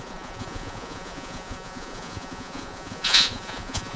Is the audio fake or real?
fake